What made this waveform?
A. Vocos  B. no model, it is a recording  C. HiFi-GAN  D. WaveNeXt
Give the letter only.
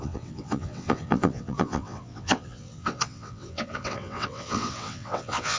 D